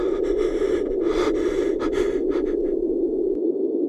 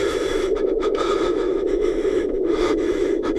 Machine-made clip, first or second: second